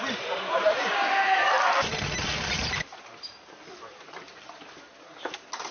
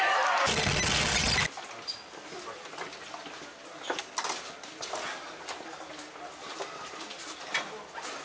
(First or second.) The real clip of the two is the second